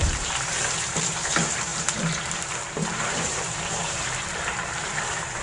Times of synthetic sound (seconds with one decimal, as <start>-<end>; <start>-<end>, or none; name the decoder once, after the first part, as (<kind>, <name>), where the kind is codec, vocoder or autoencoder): 0.0-5.4 (vocoder, BigVGAN v2)

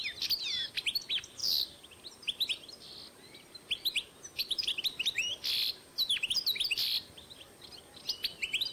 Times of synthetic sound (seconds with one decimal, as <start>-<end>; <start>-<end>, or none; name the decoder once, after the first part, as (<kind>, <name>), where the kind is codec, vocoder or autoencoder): 4.4-7.8 (vocoder, BigVGAN v2)

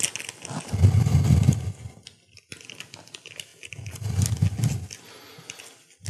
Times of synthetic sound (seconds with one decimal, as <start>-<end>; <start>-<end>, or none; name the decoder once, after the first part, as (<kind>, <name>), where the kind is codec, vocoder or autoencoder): none

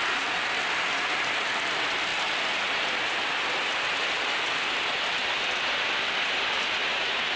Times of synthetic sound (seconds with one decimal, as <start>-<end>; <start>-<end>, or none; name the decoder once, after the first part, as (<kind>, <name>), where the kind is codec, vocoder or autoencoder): 2.1-6.5 (vocoder, BigVGAN v2)

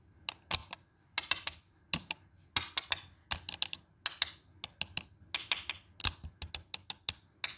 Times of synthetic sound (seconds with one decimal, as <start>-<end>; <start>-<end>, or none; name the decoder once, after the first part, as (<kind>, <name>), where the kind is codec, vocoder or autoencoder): none